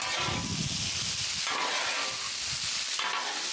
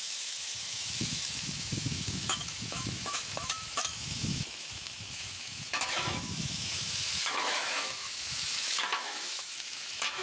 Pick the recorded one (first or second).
first